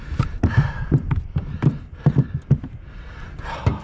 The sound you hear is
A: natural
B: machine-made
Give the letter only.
A